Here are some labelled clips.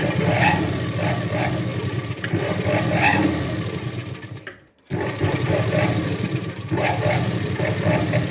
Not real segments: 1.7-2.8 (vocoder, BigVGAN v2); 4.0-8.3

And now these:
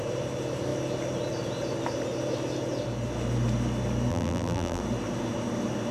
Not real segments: 4.1-4.8 (vocoder, BigVGAN v2)

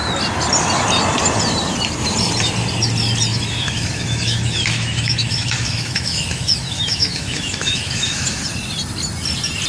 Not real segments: 3.3-8.4 (autoencoder, DAC-VAE)

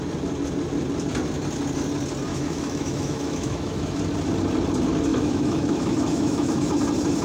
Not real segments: 2.3-4.0 (autoencoder, DAC-VAE); 5.1-6.7

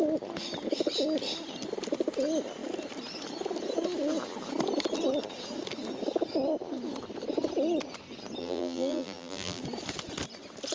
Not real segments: 8.4-9.6 (vocoder, BigVGAN v2)

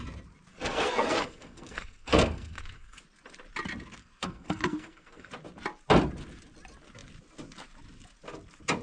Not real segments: 0.5-3.0 (codec, SNAC); 4.0-5.3

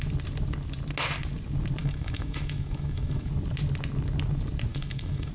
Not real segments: 1.8-3.3 (autoencoder, DAC-VAE); 4.7-5.3

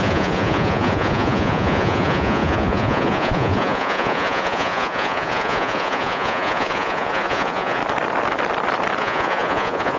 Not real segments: 0.0-7.8 (vocoder, Vocos); 9.0-10.0